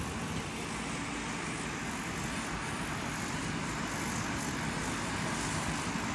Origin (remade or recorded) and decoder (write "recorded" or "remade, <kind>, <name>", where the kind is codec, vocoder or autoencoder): recorded